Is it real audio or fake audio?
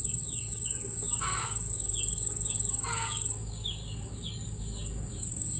fake